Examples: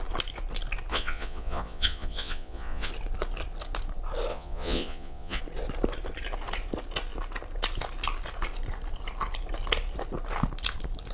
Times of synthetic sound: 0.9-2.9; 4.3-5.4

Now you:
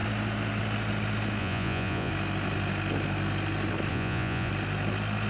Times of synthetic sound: 1.4-2.1; 3.9-4.5

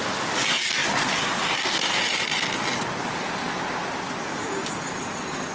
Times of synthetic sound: none